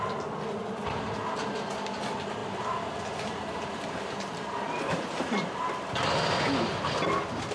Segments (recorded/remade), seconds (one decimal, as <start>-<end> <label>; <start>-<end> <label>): 0.0-2.4 recorded; 2.4-5.6 remade; 5.6-7.5 recorded